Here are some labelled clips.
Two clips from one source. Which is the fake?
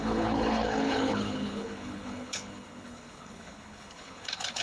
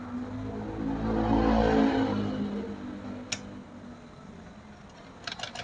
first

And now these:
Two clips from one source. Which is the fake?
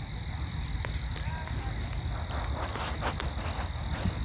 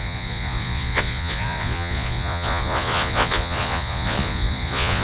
second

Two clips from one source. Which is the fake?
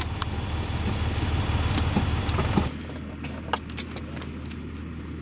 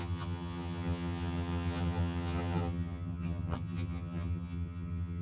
second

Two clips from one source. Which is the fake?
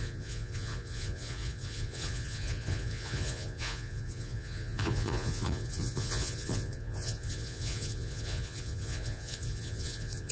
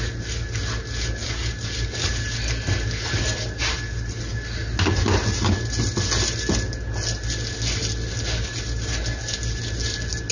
first